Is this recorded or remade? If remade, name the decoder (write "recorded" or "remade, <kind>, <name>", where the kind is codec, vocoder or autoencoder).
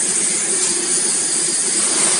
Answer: recorded